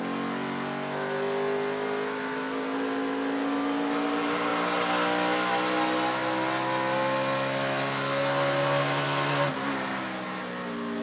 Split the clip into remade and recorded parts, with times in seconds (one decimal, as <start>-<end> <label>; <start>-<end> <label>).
0.0-11.0 recorded